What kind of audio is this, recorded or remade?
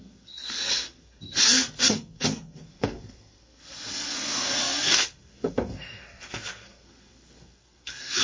remade